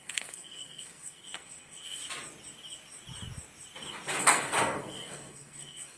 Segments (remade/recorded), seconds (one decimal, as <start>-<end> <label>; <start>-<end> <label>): 0.0-2.0 remade; 2.0-4.2 recorded; 4.2-6.0 remade